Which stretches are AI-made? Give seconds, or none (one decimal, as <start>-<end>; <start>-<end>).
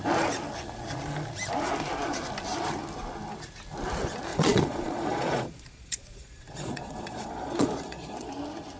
4.3-8.3